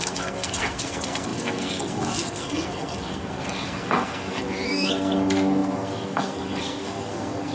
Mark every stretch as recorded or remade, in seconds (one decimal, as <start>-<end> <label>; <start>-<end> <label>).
0.0-7.5 remade